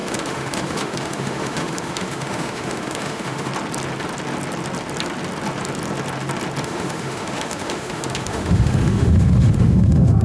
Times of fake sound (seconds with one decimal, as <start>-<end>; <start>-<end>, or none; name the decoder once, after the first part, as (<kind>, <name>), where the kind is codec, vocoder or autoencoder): 0.0-3.5 (autoencoder, DAC-VAE); 6.6-10.2